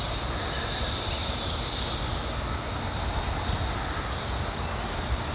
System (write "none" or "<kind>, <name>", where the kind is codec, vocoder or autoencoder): none